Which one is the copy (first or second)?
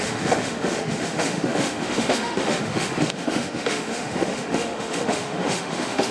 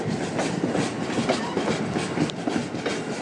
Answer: first